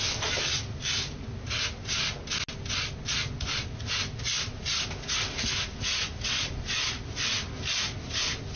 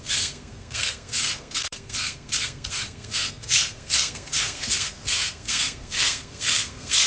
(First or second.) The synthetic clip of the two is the second